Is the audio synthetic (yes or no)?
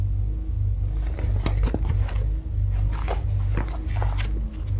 no